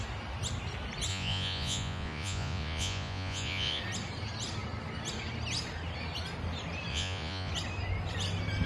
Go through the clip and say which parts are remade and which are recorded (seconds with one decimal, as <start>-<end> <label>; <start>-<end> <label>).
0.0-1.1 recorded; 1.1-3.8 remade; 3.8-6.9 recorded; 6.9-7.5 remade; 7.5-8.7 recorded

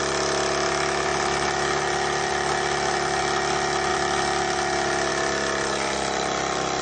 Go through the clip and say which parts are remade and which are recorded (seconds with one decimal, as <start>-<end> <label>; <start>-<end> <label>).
0.0-6.8 recorded

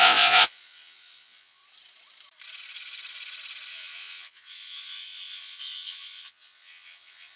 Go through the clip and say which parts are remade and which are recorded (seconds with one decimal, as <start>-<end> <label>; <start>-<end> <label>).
0.0-1.6 remade; 1.6-3.7 recorded; 3.7-7.4 remade

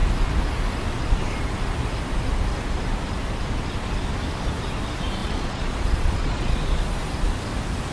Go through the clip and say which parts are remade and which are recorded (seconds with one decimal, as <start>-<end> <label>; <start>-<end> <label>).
0.0-5.2 recorded; 5.2-6.8 remade; 6.8-7.9 recorded